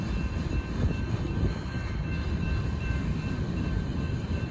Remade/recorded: remade